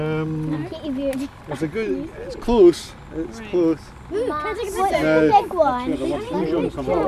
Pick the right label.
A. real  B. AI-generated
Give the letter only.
A